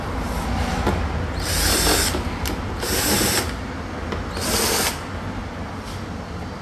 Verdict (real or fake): real